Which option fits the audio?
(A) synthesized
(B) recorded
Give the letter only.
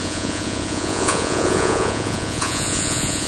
A